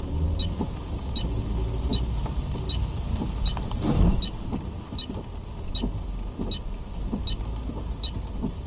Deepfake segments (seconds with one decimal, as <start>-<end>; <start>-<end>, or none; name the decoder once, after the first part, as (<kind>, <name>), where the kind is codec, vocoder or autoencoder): none